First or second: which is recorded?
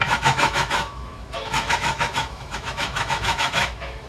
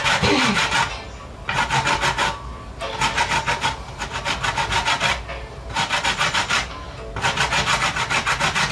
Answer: second